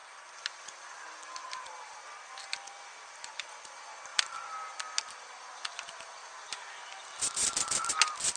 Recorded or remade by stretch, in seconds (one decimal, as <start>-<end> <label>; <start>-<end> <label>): 0.0-8.4 recorded